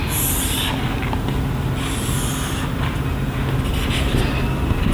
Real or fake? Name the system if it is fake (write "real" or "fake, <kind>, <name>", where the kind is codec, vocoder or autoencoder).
real